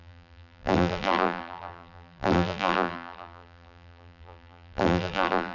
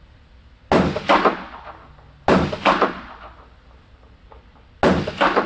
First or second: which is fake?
first